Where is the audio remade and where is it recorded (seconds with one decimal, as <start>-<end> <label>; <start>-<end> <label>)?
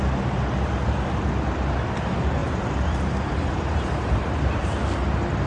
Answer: 0.0-2.4 recorded; 2.4-4.6 remade; 4.6-5.5 recorded